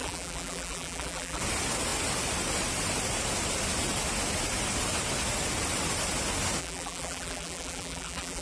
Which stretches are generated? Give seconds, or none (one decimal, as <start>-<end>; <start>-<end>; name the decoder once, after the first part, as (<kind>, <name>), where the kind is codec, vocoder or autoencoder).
0.0-1.4 (vocoder, BigVGAN v2); 6.6-8.4